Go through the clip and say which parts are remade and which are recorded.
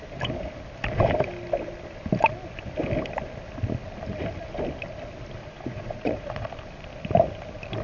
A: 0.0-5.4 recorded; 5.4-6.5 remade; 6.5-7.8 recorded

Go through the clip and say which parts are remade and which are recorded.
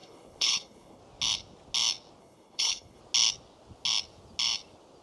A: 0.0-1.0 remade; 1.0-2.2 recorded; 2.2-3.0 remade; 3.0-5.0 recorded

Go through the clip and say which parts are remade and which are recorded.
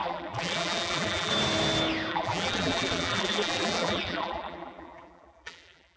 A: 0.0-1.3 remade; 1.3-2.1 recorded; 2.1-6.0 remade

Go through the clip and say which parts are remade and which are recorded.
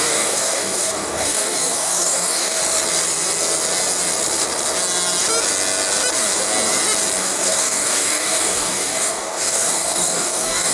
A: 0.0-2.6 remade; 2.6-7.2 recorded; 7.2-10.7 remade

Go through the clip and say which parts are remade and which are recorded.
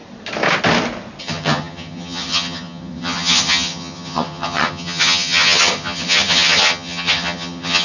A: 0.0-1.2 recorded; 1.2-7.8 remade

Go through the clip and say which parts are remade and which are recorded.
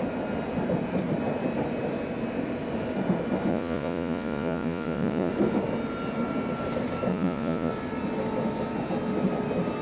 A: 0.0-3.5 recorded; 3.5-5.3 remade; 5.3-7.1 recorded; 7.1-7.7 remade; 7.7-9.8 recorded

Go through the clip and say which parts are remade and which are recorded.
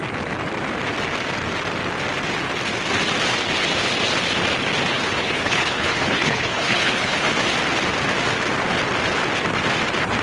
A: 0.0-4.9 recorded; 4.9-7.3 remade; 7.3-10.2 recorded